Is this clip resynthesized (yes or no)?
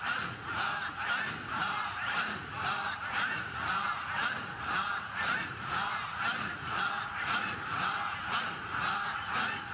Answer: yes